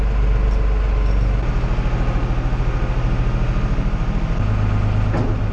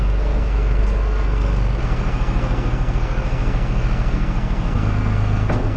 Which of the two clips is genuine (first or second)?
first